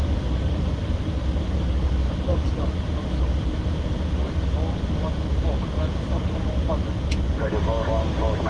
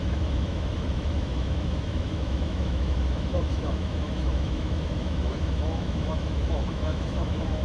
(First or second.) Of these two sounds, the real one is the first